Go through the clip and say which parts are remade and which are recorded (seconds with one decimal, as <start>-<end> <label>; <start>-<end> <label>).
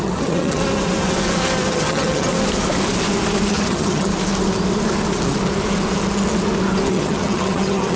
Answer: 0.0-0.6 remade; 0.6-1.7 recorded; 1.7-2.3 remade; 2.3-3.5 recorded; 3.5-4.1 remade; 4.1-6.9 recorded; 6.9-8.0 remade